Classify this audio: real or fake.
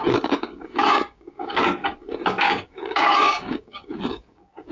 fake